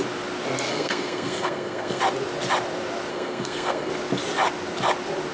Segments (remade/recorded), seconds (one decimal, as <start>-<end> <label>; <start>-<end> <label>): 0.0-0.7 recorded; 0.7-2.0 remade; 2.0-3.1 recorded; 3.1-3.9 remade; 3.9-5.3 recorded